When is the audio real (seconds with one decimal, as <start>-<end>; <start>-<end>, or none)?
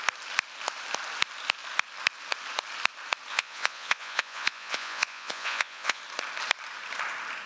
0.0-3.3; 6.0-7.5